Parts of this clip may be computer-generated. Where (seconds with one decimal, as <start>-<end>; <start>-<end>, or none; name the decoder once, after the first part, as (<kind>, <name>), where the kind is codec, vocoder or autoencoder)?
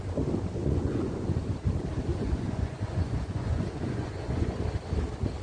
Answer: 0.6-1.3 (vocoder, Vocos); 2.1-4.6